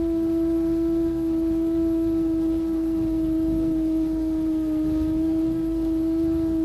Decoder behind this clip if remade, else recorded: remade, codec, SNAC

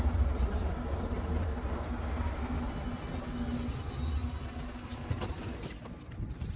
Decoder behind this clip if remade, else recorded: recorded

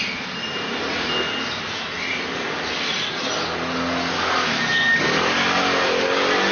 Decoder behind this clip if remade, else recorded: recorded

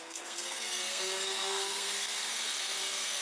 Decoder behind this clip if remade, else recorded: remade, codec, SNAC